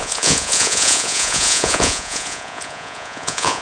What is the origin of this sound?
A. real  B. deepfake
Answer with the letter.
B